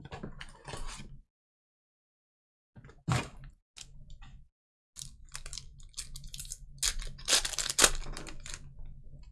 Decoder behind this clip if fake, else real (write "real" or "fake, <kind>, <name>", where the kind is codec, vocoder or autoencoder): real